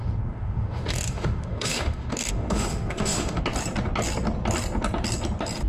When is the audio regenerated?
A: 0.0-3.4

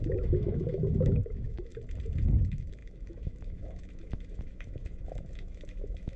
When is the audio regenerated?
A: 0.0-1.7; 2.4-6.2

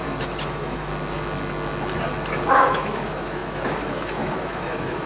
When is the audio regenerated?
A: 0.0-0.9; 2.5-5.1

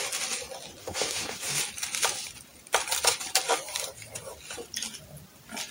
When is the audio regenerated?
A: 0.8-1.6

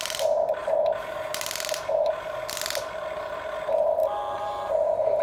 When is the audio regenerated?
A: none

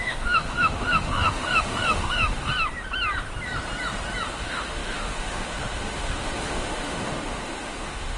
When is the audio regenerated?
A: 0.0-2.5; 4.3-8.2